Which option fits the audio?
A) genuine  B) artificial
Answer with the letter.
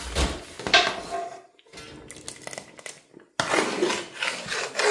A